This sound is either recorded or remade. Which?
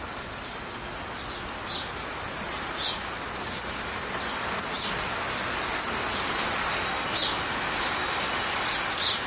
recorded